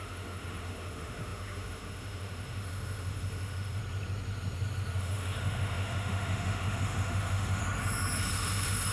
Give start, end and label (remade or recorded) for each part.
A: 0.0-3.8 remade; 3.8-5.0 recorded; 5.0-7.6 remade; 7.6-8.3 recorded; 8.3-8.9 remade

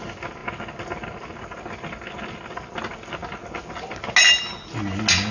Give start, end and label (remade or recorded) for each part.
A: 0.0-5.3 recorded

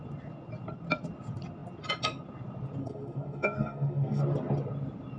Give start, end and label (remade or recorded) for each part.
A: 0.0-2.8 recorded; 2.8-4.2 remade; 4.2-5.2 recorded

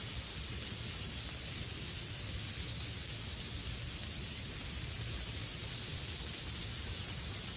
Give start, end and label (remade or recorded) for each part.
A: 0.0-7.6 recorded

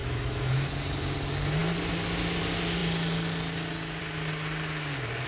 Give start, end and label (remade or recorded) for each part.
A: 0.0-0.7 remade; 0.7-5.3 recorded

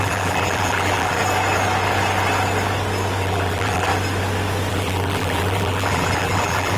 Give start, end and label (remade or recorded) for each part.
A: 0.0-1.2 remade; 1.2-3.2 recorded; 3.2-3.9 remade; 3.9-4.7 recorded; 4.7-6.8 remade

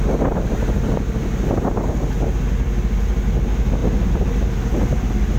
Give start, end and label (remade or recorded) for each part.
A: 0.0-5.4 recorded